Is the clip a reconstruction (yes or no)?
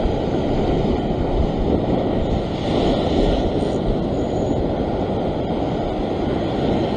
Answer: no